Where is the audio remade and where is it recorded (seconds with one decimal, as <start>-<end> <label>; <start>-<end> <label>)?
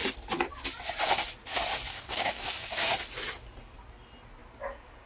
0.0-1.9 recorded; 1.9-2.7 remade; 2.7-5.1 recorded